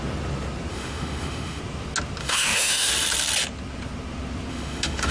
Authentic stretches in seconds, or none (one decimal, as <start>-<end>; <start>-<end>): 0.0-0.7; 1.6-2.2; 2.9-4.5